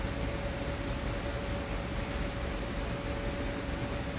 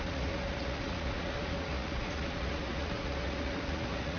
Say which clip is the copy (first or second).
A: second